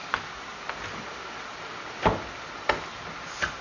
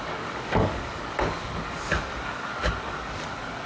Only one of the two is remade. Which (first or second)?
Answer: second